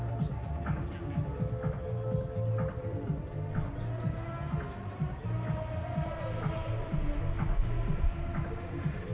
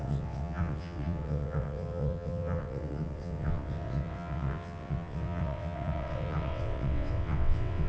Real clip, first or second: first